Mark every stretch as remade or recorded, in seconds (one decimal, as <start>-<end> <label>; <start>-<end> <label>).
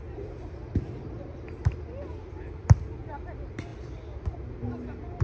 0.0-5.2 recorded